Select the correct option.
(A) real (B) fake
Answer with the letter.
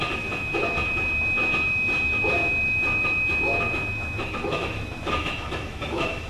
B